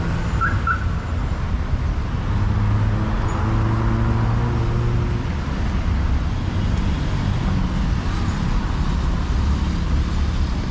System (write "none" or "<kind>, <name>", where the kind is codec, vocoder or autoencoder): none